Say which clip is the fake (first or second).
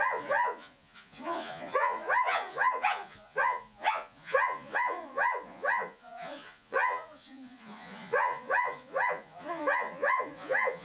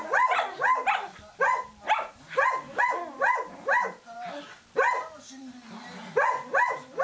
first